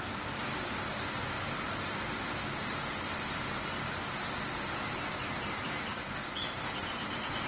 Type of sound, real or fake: real